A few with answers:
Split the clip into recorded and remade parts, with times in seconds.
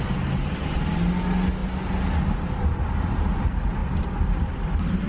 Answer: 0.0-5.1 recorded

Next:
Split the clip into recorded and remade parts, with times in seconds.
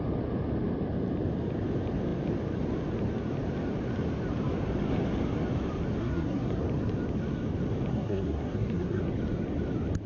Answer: 0.0-6.0 recorded; 6.0-6.6 remade; 6.6-7.9 recorded; 7.9-9.0 remade; 9.0-10.1 recorded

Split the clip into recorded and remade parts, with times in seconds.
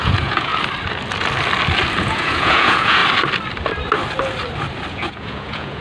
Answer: 0.0-0.5 remade; 0.5-2.0 recorded; 2.0-3.0 remade; 3.0-4.9 recorded; 4.9-5.8 remade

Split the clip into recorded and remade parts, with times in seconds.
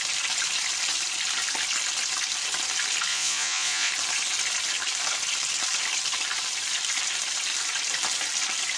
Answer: 0.0-3.1 recorded; 3.1-3.9 remade; 3.9-8.8 recorded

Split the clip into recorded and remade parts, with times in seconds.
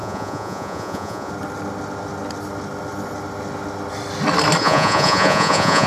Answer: 0.0-1.3 remade; 1.3-4.6 recorded; 4.6-5.9 remade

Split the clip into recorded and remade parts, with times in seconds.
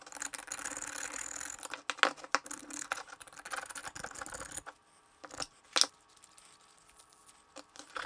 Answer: 0.0-8.1 recorded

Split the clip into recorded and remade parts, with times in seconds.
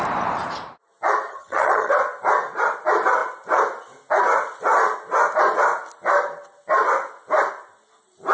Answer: 0.0-1.3 recorded; 1.3-1.9 remade; 1.9-8.3 recorded